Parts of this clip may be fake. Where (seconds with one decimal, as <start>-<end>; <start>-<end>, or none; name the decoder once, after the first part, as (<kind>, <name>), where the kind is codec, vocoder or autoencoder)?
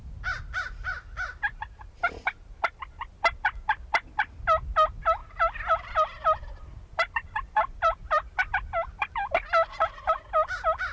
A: 5.2-9.3 (vocoder, BigVGAN v2)